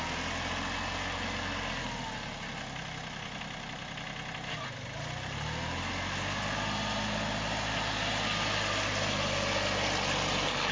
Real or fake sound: real